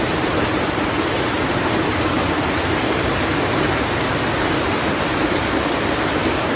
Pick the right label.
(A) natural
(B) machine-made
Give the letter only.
B